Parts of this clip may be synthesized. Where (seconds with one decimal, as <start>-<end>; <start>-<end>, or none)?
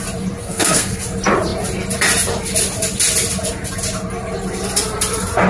0.4-1.0